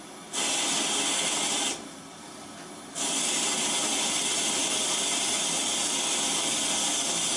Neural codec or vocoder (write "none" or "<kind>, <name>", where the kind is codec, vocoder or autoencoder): vocoder, BigVGAN v2